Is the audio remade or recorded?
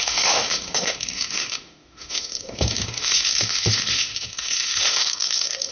remade